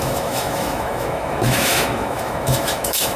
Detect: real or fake fake